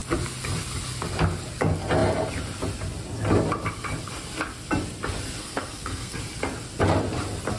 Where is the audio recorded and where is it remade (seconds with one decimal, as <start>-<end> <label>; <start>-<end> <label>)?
0.0-5.4 recorded; 5.4-6.2 remade; 6.2-7.6 recorded